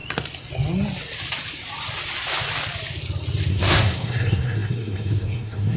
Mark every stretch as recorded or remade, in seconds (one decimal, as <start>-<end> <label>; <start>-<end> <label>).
0.0-3.5 recorded; 3.5-5.8 remade